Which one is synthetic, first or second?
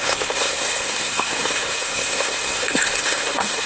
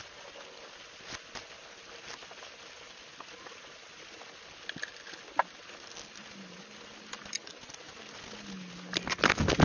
first